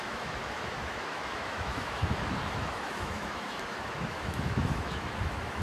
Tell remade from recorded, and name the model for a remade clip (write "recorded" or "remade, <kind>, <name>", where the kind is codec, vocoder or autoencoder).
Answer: remade, autoencoder, DAC-VAE